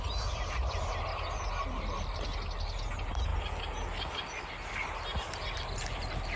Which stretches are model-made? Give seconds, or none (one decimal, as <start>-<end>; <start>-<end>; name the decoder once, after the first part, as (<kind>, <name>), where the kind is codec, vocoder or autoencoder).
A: none